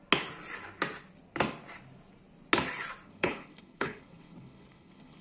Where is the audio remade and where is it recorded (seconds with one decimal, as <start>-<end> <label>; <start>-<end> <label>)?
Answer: 0.0-3.1 recorded; 3.1-5.2 remade